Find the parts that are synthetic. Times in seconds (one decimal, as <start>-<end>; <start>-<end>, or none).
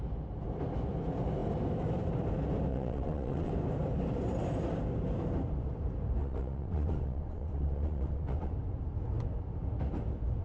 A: 2.7-3.5; 6.2-8.5